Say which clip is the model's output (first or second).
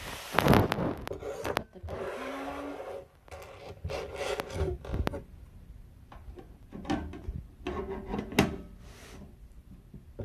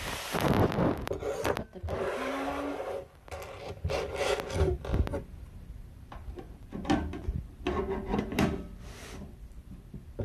second